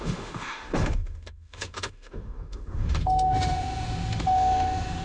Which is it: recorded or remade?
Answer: remade